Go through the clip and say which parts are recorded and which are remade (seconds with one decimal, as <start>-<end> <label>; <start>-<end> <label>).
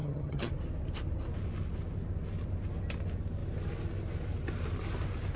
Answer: 0.0-0.5 remade; 0.5-5.4 recorded